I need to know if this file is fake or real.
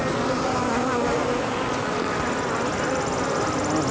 fake